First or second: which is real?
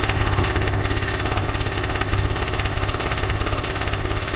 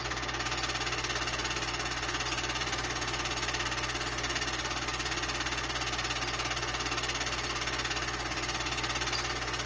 second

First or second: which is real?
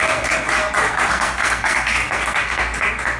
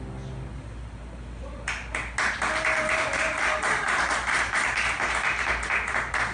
second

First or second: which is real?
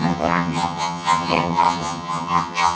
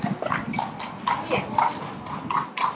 second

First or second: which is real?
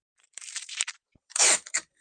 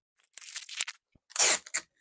second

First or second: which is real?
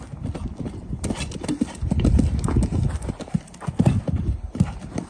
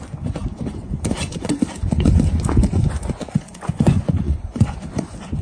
first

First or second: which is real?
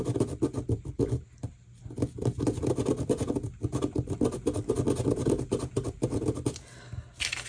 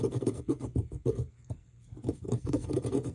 first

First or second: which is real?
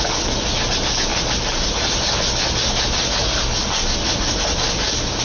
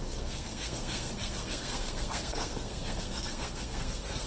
first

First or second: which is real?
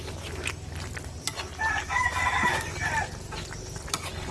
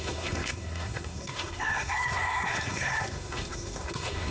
first